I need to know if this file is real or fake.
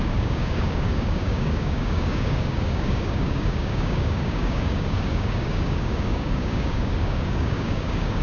fake